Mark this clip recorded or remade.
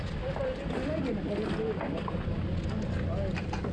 recorded